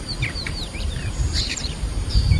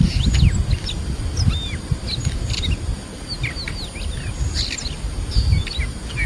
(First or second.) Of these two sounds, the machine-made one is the first